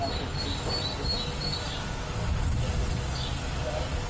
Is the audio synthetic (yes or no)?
no